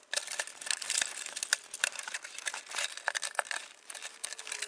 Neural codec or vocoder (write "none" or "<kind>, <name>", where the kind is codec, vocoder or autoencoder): none